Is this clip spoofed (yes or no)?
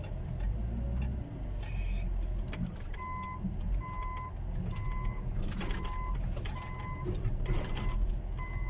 no